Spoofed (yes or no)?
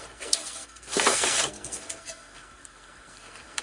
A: yes